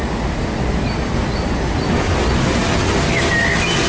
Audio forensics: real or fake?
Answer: real